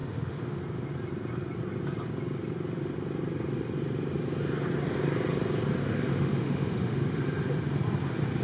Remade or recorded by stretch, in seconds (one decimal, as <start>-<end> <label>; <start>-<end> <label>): 0.0-0.6 remade; 0.6-5.8 recorded; 5.8-7.2 remade; 7.2-8.4 recorded